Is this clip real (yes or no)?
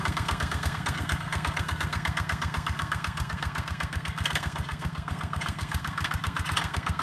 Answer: no